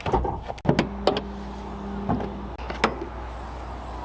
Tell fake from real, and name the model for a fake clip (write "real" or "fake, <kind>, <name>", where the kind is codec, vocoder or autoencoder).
real